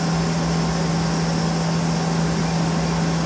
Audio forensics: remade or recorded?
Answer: recorded